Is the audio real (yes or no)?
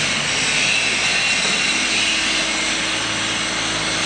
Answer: yes